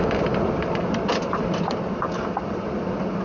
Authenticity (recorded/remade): remade